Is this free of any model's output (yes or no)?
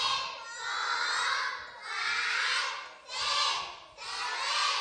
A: yes